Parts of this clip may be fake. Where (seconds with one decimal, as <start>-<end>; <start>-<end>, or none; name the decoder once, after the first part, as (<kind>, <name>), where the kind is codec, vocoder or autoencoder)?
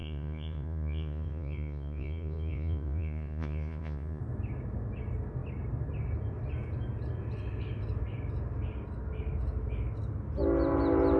0.0-4.2 (vocoder, Vocos)